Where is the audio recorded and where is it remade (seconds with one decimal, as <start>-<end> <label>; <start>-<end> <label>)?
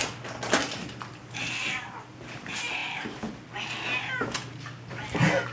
0.0-5.5 recorded